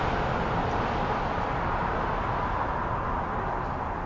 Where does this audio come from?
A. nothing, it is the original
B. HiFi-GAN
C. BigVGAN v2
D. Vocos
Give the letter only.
A